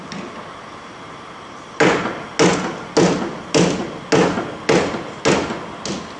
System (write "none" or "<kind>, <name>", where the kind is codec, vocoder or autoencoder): none